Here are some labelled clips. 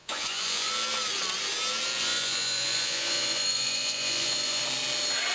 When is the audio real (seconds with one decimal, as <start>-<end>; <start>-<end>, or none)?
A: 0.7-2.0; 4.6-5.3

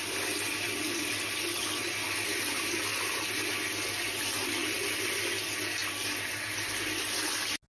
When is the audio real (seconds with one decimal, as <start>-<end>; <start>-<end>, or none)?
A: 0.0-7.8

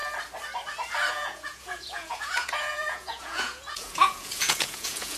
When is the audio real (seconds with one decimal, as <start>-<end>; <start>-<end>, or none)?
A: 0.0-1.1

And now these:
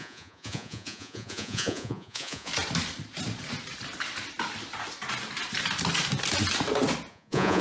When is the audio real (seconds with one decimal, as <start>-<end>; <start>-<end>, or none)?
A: 2.5-7.1

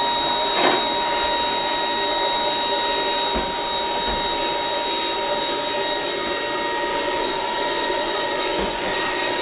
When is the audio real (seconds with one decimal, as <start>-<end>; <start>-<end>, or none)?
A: 0.0-6.9

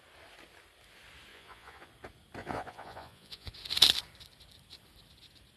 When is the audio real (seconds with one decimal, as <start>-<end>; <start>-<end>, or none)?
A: 0.0-1.3; 1.9-2.4; 3.5-5.6